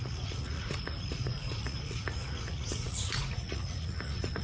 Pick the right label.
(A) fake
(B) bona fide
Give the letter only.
A